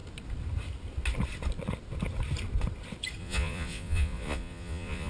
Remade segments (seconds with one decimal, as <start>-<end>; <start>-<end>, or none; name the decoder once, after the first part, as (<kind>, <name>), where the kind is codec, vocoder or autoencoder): 3.2-5.1 (vocoder, Vocos)